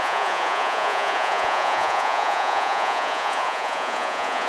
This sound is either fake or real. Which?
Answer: fake